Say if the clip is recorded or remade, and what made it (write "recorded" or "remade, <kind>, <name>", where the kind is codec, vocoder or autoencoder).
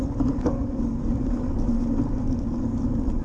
recorded